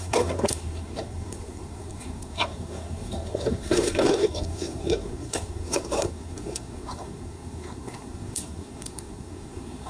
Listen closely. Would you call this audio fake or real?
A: fake